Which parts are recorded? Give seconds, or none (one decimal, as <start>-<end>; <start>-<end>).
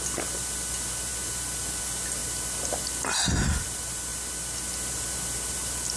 0.0-6.0